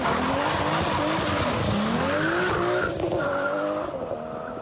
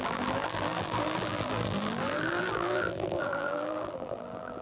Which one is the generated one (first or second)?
second